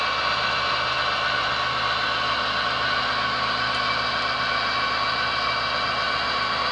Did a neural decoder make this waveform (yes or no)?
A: no